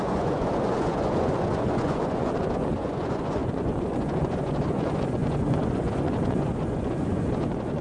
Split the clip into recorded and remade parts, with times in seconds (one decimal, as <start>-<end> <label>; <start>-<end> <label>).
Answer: 0.0-7.8 remade